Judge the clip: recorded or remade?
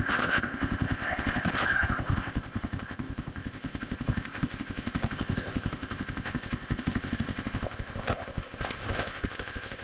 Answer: remade